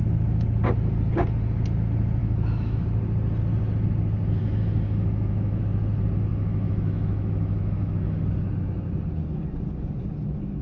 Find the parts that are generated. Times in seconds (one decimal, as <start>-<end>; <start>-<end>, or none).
2.2-2.8; 4.4-5.6; 6.3-8.2